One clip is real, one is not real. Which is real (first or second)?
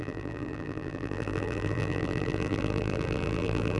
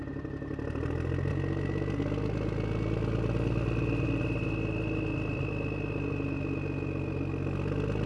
second